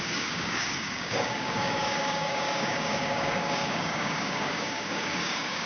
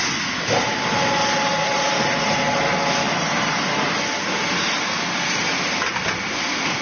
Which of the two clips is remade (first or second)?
first